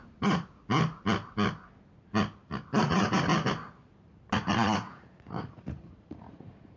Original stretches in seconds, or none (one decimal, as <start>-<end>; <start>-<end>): 0.6-2.8; 3.3-4.5